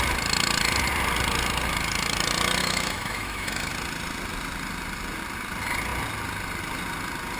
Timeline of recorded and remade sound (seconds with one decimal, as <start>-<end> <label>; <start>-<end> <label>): 0.0-2.6 recorded; 2.6-3.7 remade; 3.7-7.4 recorded